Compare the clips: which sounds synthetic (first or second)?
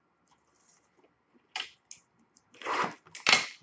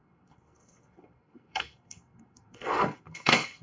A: second